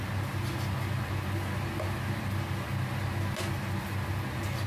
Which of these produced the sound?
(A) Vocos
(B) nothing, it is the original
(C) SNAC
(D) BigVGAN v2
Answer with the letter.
B